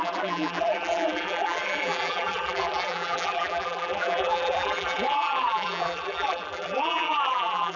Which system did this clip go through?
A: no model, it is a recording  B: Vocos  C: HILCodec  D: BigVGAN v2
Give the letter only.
D